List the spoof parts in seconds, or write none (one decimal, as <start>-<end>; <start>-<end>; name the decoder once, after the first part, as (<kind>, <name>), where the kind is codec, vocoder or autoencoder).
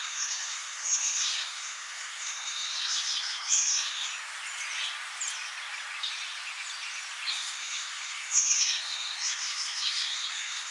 0.0-4.1 (codec, SNAC); 7.3-10.7